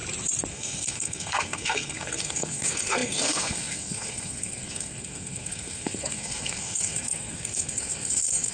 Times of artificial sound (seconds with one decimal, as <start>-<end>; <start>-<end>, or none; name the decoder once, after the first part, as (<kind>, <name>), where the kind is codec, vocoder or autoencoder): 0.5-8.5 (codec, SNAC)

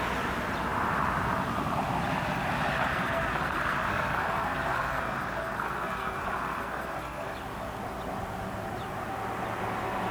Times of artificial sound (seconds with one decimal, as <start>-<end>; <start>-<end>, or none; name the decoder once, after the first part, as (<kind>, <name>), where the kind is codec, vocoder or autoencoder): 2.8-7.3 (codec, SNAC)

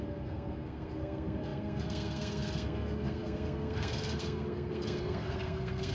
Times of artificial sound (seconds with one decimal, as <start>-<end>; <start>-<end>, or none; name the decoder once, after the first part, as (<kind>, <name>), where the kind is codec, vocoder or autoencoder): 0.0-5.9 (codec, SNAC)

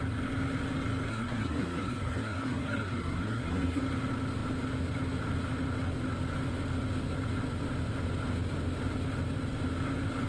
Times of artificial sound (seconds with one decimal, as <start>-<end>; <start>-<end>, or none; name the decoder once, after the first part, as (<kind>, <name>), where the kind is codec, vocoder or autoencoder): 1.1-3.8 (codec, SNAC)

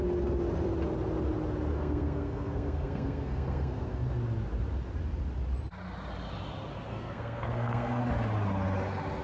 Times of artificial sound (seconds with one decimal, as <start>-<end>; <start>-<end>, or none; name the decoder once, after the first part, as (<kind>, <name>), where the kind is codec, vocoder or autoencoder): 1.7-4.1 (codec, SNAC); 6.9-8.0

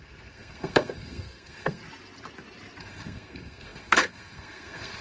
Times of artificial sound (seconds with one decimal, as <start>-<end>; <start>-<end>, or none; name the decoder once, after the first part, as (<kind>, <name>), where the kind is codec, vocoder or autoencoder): 0.0-1.8 (codec, SNAC); 2.8-5.0

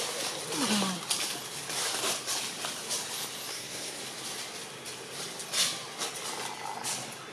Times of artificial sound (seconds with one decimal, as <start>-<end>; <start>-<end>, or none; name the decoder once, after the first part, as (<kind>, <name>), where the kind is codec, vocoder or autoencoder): 3.5-4.0 (codec, SNAC)

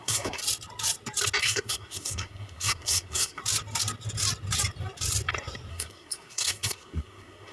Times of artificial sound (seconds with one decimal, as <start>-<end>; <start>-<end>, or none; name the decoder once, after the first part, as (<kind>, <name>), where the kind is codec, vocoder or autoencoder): 0.0-0.4 (codec, SNAC); 1.4-3.4; 5.7-7.5